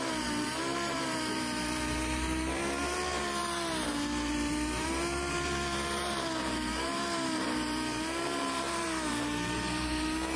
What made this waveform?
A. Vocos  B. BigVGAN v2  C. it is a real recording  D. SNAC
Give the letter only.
B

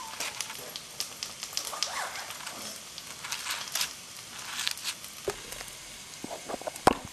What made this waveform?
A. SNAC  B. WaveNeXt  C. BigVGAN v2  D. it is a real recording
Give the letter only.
D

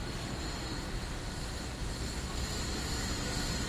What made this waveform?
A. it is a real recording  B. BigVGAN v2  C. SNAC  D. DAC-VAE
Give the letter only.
A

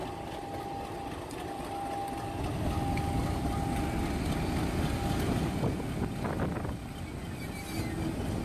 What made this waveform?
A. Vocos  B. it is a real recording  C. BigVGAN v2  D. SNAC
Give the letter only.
B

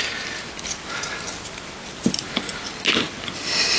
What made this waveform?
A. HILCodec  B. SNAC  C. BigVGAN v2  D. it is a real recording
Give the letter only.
D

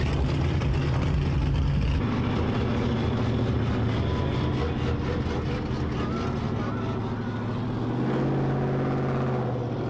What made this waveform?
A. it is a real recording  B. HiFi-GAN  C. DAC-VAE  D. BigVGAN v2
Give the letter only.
A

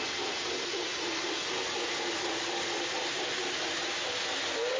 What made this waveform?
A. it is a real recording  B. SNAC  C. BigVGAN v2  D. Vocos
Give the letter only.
A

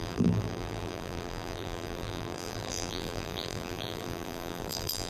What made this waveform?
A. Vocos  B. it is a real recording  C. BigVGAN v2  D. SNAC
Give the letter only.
C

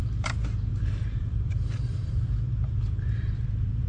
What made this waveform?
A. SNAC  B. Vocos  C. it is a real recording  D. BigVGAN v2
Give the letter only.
D